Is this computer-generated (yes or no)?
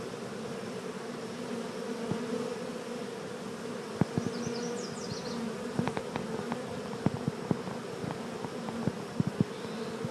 no